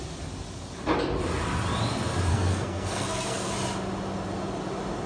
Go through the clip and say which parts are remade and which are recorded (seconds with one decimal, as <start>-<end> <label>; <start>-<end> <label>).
0.0-2.3 recorded; 2.3-3.5 remade; 3.5-5.1 recorded